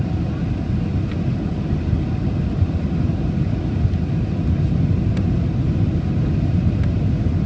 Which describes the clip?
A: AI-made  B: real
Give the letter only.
B